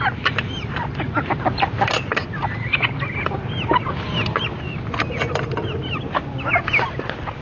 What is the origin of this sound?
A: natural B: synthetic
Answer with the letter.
A